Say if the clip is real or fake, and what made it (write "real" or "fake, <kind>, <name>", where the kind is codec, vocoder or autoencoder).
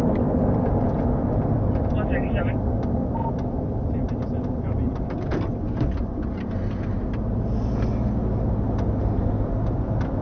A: real